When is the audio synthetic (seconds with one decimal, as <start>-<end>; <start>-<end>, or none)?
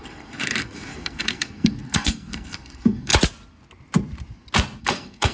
0.0-3.1; 4.8-5.3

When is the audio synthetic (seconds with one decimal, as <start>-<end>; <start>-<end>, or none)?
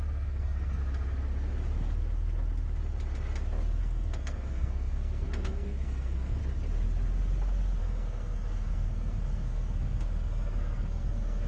0.0-0.8; 3.8-6.4; 7.8-11.5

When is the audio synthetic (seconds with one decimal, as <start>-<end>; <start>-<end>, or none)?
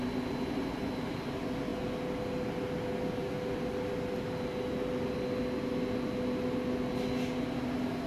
none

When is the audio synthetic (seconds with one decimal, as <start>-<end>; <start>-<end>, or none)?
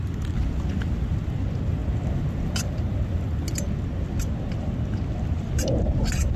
none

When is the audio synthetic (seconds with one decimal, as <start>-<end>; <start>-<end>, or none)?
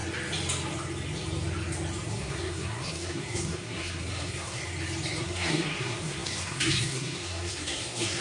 2.1-4.6; 5.2-8.2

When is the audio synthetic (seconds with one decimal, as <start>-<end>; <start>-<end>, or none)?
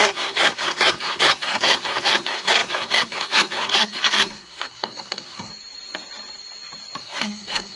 0.0-5.5; 7.0-7.8